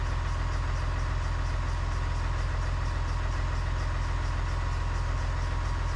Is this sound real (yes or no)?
yes